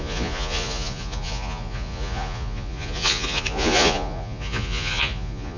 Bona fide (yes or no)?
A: no